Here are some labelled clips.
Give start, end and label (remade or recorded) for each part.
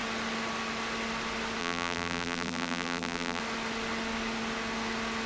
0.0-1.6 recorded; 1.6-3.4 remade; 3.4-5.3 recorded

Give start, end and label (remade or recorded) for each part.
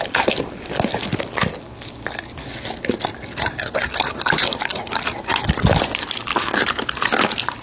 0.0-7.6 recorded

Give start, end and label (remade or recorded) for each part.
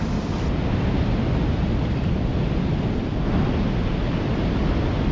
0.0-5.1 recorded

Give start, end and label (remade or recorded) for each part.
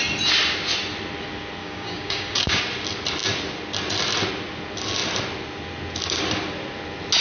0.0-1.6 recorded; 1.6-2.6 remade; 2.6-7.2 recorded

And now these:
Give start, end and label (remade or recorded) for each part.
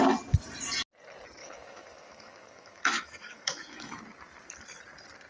0.0-1.4 recorded; 1.4-4.0 remade; 4.0-5.3 recorded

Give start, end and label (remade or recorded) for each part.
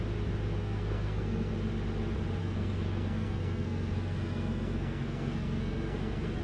0.0-0.6 recorded; 0.6-1.5 remade; 1.5-2.4 recorded; 2.4-6.4 remade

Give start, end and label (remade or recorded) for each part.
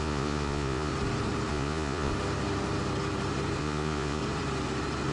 0.0-0.9 remade; 0.9-1.5 recorded; 1.5-2.1 remade; 2.1-3.6 recorded; 3.6-4.2 remade; 4.2-5.1 recorded